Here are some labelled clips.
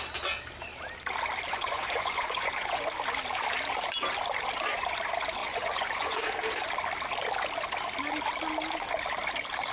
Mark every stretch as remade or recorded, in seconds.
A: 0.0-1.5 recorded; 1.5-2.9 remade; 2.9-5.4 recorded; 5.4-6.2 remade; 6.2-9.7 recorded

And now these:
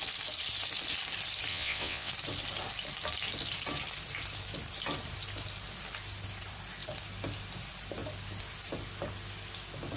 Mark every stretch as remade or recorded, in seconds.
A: 0.0-1.5 recorded; 1.5-2.1 remade; 2.1-10.0 recorded

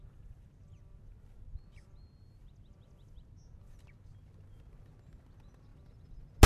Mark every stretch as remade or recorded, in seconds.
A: 0.0-6.5 recorded